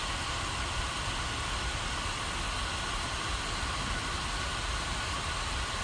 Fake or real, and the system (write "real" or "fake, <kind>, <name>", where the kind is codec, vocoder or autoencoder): real